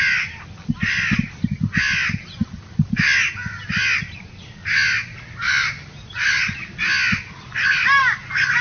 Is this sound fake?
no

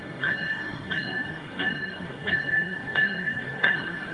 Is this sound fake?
yes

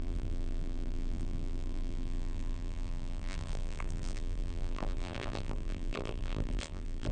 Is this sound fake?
yes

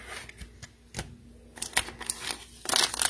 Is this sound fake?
no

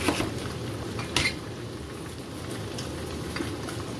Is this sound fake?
no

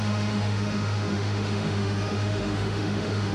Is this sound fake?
yes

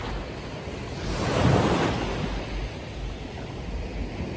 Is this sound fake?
no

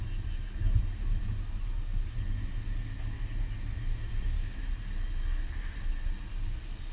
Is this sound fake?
no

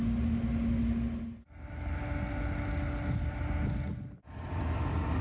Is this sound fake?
no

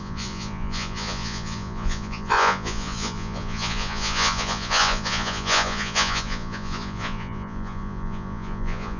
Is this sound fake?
yes